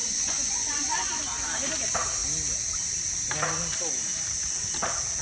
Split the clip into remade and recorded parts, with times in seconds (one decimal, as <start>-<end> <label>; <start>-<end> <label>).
0.0-1.1 remade; 1.1-5.2 recorded